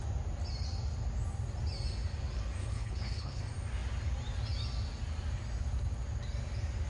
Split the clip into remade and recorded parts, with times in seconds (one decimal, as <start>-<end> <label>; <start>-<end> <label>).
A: 0.0-2.6 recorded; 2.6-3.4 remade; 3.4-6.9 recorded